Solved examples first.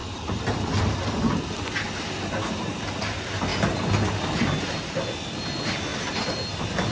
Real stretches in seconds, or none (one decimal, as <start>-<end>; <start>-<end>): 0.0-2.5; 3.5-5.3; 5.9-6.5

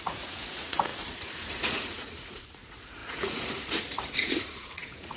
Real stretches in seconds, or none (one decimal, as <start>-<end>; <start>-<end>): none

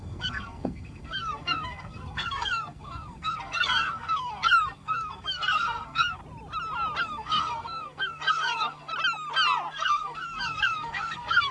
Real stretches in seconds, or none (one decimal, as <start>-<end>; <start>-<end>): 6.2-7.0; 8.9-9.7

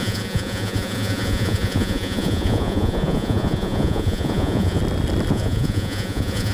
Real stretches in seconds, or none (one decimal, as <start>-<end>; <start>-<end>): 4.8-5.3

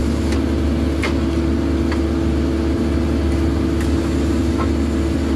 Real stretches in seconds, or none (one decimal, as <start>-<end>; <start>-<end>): 0.0-5.4

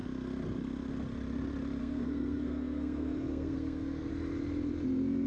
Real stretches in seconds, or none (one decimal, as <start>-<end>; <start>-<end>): 0.0-1.8; 4.1-5.3